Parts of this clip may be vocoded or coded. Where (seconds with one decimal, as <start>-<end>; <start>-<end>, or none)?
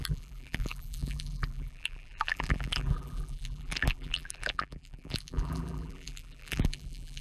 0.0-7.2